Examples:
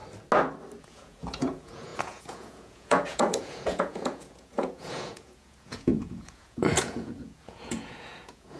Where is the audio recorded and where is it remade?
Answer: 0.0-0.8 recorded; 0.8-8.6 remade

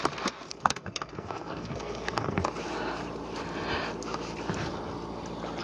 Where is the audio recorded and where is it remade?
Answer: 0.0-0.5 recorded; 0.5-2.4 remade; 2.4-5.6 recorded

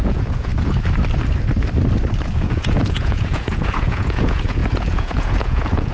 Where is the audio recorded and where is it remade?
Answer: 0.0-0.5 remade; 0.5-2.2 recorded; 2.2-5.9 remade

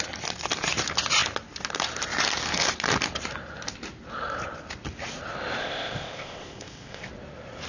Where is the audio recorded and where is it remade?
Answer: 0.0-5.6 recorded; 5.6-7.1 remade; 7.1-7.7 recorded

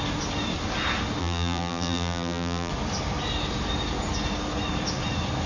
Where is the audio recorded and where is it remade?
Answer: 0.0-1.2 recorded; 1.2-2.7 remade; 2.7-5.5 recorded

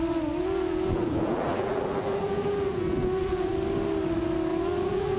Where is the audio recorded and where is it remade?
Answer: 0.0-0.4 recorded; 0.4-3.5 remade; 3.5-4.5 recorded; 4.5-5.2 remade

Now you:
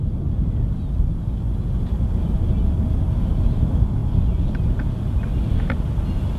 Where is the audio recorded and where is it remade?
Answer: 0.0-6.4 recorded